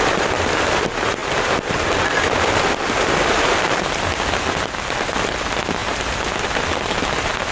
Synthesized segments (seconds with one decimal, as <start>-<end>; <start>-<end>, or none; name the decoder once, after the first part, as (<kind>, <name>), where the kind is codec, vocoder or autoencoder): none